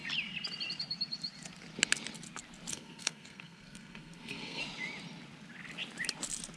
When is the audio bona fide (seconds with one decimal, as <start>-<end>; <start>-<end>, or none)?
0.0-2.7; 4.6-6.6